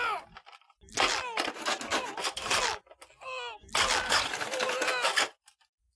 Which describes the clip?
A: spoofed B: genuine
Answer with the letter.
B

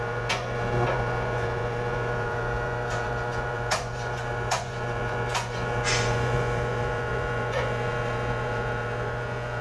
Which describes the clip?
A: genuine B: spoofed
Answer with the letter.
B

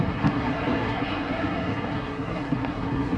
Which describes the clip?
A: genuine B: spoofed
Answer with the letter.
B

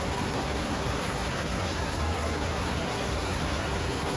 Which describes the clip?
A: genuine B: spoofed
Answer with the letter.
B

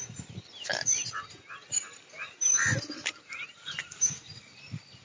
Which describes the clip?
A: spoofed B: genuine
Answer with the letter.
A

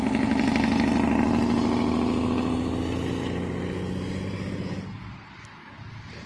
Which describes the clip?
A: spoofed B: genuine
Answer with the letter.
B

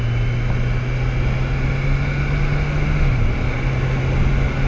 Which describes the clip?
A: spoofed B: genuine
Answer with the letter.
B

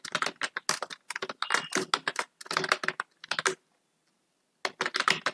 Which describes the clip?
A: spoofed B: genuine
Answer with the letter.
B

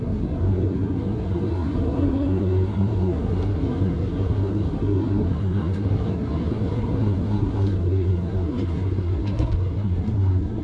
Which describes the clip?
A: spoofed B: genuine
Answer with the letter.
A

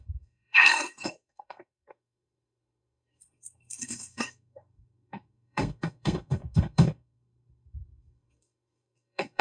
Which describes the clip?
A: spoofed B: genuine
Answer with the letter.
A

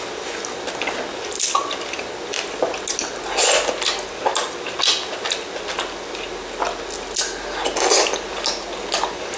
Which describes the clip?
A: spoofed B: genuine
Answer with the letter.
B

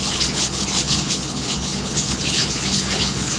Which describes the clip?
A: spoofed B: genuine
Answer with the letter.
A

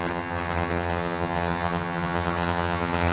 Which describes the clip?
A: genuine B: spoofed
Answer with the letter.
B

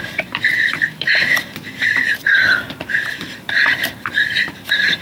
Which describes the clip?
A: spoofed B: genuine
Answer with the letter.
A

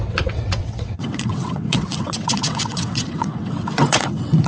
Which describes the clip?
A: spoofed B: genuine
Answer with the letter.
A